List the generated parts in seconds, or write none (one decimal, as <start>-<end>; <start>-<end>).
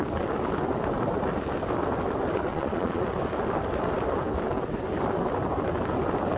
2.5-3.0